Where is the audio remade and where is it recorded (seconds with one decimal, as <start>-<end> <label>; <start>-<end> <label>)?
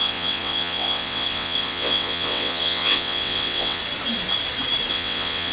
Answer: 0.0-3.8 remade; 3.8-4.9 recorded; 4.9-5.5 remade